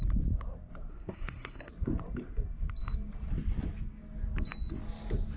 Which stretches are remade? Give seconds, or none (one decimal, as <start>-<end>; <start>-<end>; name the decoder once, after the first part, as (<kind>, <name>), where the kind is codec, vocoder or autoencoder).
0.9-1.7 (codec, SNAC)